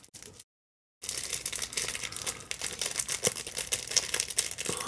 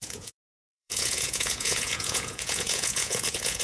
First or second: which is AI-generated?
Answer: second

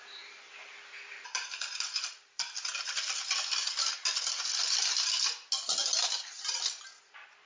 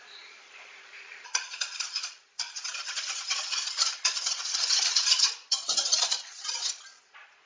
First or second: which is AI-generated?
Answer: second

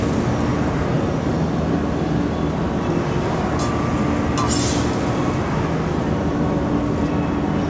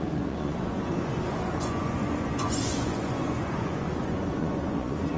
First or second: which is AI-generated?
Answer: second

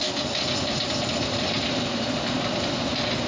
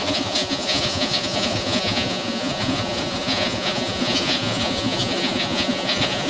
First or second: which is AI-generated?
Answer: second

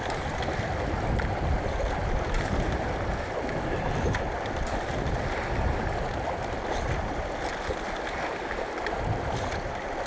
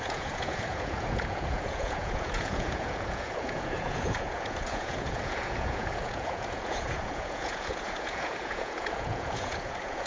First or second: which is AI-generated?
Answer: second